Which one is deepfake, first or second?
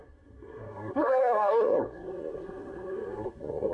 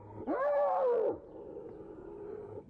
first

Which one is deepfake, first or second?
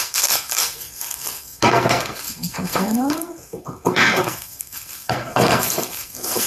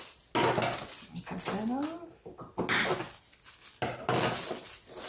first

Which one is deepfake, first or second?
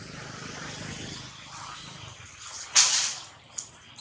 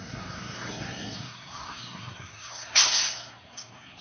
second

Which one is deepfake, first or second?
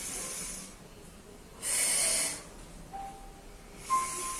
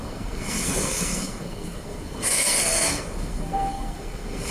second